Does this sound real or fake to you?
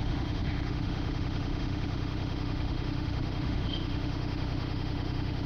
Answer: fake